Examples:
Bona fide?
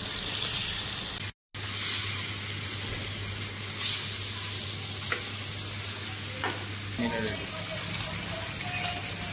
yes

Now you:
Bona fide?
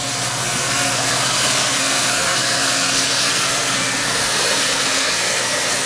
no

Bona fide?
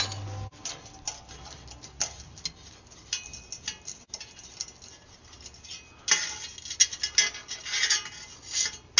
yes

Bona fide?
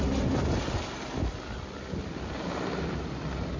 yes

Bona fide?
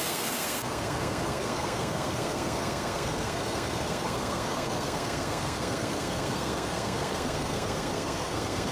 no